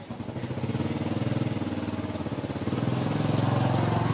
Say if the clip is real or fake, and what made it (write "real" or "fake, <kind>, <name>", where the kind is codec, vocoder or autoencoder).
real